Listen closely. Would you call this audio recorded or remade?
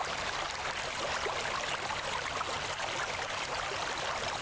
recorded